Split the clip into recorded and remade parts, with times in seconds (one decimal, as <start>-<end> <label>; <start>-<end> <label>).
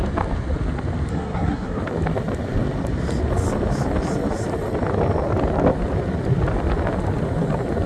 0.0-1.1 recorded; 1.1-1.8 remade; 1.8-7.9 recorded